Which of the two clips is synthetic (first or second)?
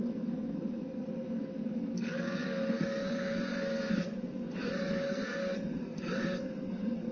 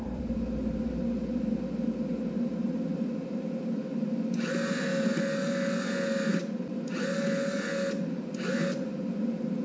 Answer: first